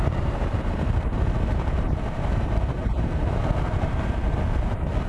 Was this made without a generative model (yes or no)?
no